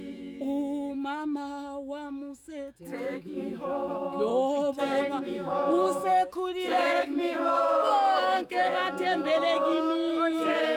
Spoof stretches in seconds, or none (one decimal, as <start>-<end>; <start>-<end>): 0.0-4.3; 4.8-10.8